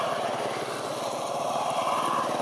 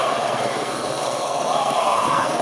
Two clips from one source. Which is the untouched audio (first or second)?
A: first